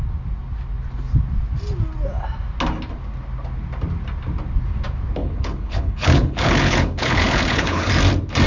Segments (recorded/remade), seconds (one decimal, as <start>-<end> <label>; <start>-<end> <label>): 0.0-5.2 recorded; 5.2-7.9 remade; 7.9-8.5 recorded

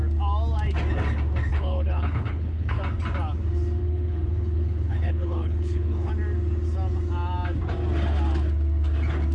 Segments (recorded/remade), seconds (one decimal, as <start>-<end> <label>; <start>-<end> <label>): 0.0-1.5 recorded; 1.5-2.8 remade; 2.8-3.8 recorded; 3.8-6.1 remade; 6.1-9.3 recorded

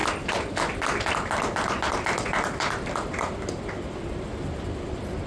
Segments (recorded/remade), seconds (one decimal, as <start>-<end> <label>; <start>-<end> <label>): 0.0-5.3 recorded

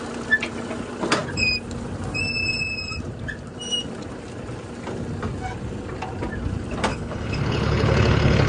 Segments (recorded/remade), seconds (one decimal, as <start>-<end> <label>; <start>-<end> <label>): 0.0-6.9 recorded; 6.9-8.5 remade

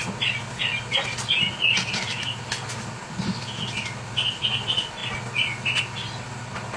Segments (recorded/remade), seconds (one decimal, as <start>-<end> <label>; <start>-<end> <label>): 0.0-6.8 recorded